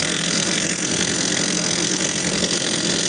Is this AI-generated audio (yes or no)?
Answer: yes